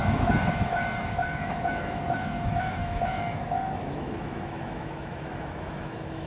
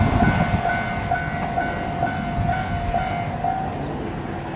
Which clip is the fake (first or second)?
first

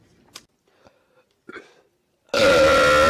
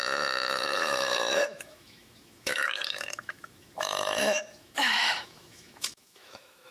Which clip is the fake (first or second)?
second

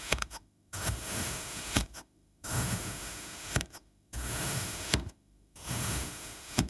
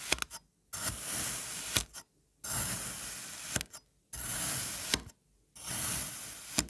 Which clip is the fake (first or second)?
first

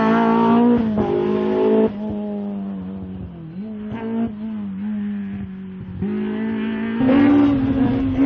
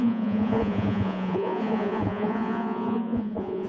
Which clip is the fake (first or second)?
second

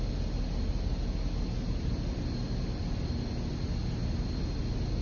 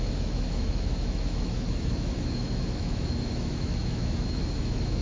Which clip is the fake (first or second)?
second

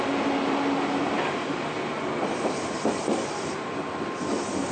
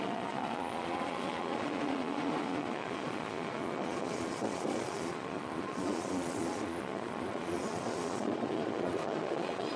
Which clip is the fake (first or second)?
second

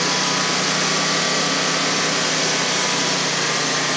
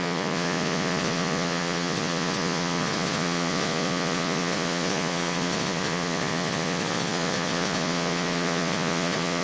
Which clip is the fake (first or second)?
second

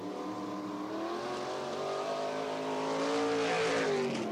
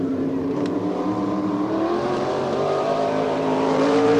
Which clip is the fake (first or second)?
second